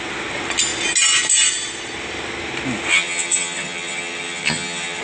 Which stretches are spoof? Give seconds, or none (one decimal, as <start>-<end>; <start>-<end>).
2.9-5.0